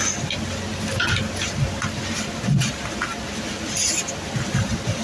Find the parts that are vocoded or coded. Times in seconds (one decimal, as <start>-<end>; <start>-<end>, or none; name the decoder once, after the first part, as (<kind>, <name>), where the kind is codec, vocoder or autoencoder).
none